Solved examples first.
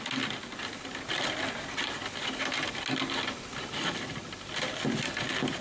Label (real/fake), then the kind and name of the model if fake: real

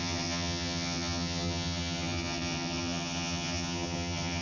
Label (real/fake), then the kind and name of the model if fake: fake, vocoder, HiFi-GAN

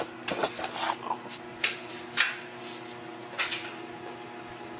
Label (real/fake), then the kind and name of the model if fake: real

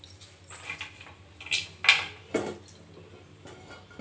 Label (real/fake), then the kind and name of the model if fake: real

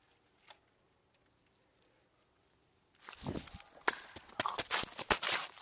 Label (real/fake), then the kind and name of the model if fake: real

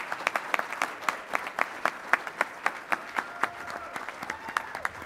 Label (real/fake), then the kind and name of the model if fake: real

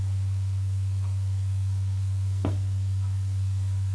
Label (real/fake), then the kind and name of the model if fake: fake, codec, SNAC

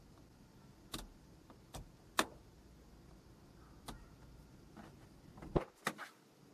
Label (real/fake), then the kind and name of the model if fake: real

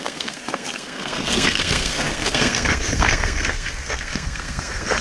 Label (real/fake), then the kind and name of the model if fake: fake, codec, SNAC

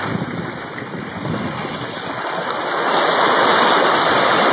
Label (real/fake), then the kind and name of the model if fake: real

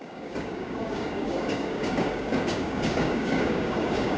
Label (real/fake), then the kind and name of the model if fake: fake, codec, DAC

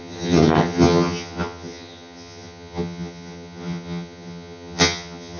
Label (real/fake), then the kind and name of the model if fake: fake, vocoder, HiFi-GAN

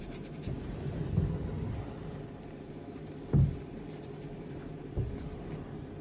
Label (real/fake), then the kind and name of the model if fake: fake, vocoder, BigVGAN v2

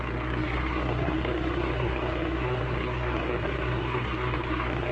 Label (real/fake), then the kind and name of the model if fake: fake, codec, SNAC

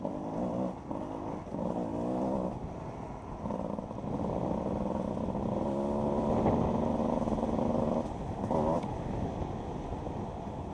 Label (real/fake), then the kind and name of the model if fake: real